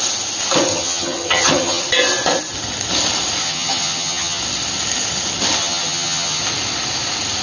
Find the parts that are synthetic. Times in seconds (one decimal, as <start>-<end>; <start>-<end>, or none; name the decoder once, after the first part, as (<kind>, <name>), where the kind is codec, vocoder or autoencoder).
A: 0.7-1.8 (vocoder, HiFi-GAN); 3.4-4.4; 5.6-6.4